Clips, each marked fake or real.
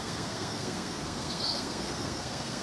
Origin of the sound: fake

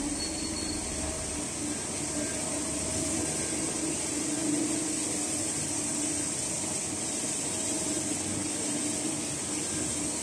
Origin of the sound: real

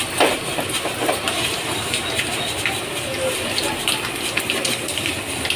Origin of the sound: real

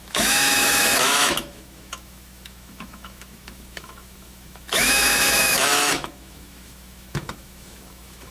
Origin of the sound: fake